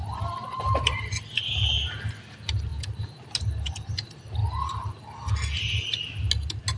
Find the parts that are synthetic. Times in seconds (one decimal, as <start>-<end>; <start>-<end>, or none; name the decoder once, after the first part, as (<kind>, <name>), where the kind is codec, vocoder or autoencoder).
0.0-1.0 (vocoder, BigVGAN v2); 4.4-5.0